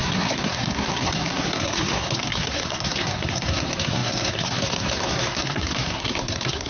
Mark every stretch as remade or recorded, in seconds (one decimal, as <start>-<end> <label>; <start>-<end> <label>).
0.0-6.7 remade